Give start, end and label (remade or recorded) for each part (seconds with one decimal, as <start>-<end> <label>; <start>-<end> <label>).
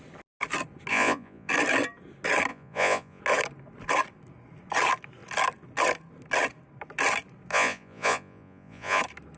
0.0-0.9 recorded; 0.9-1.5 remade; 1.5-2.5 recorded; 2.5-3.2 remade; 3.2-7.5 recorded; 7.5-9.0 remade; 9.0-9.4 recorded